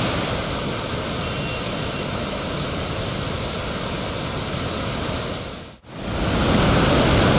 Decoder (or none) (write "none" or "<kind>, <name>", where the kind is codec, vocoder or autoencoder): none